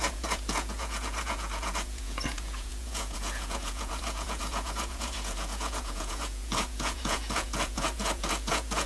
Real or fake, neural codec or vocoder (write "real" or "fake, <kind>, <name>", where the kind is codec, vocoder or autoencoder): fake, vocoder, Vocos